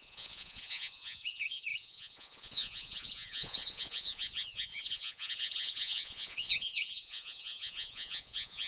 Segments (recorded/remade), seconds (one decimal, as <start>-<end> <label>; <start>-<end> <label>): 0.0-8.7 remade